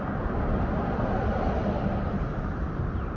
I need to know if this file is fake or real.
real